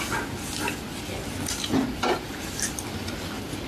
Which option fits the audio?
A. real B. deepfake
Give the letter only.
A